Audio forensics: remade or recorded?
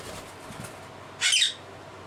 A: recorded